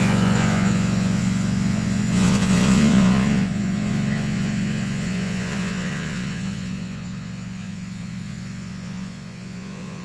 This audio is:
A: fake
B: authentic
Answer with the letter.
A